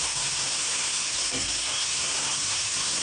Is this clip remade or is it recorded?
remade